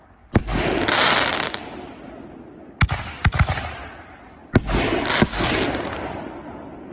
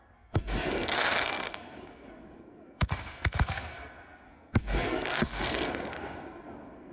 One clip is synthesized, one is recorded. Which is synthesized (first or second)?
second